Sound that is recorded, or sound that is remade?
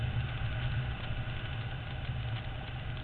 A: recorded